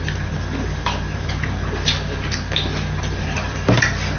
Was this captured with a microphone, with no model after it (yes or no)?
yes